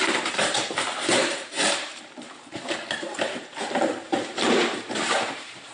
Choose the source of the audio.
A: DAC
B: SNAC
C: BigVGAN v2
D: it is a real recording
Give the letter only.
C